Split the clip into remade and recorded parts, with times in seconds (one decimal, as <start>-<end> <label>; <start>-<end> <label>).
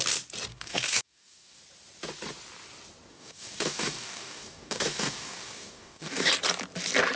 0.0-0.5 recorded; 0.5-1.6 remade; 1.6-3.1 recorded; 3.1-6.3 remade; 6.3-7.2 recorded